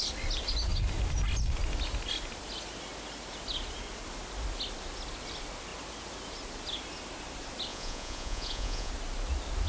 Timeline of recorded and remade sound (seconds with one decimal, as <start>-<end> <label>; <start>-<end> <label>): 0.0-7.7 recorded; 7.7-8.9 remade; 8.9-9.7 recorded